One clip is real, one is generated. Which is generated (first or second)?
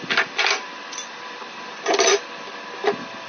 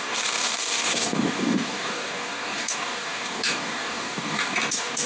second